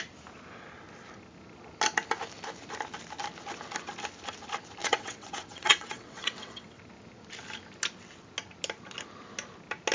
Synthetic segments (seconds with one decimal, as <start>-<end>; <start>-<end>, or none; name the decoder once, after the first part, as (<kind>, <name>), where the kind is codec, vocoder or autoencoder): 4.8-6.8 (vocoder, WaveNeXt)